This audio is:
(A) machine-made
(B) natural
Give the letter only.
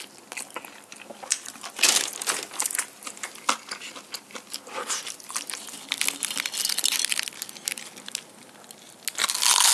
B